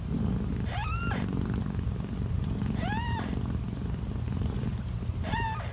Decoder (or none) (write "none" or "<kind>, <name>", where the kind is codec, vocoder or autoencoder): none